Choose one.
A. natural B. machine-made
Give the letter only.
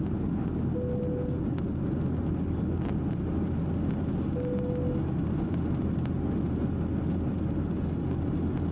A